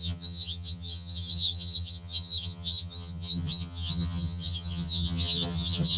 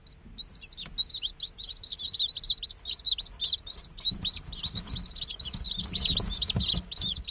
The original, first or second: second